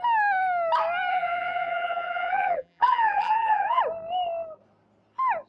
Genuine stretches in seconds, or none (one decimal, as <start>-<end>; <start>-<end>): 0.0-1.1; 3.8-5.5